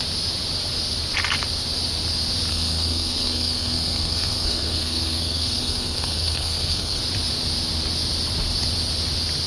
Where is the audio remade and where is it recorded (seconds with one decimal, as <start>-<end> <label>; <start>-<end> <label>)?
0.0-2.5 recorded; 2.5-7.0 remade; 7.0-9.5 recorded